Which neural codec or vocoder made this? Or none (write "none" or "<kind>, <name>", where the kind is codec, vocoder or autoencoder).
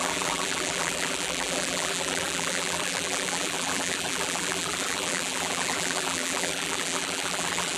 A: vocoder, BigVGAN v2